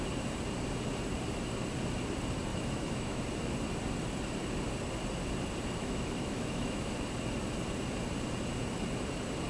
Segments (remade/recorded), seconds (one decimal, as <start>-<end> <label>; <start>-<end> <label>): 0.0-2.5 recorded; 2.5-3.2 remade; 3.2-5.8 recorded; 5.8-6.9 remade; 6.9-9.5 recorded